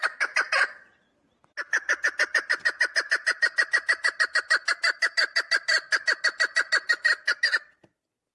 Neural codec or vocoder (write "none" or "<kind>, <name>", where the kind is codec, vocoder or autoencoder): none